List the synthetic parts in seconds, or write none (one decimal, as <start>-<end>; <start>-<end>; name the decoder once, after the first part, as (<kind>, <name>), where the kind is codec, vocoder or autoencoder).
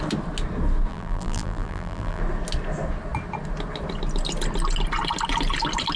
0.9-2.2 (vocoder, BigVGAN v2)